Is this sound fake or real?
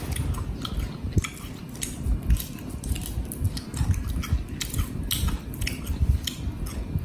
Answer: real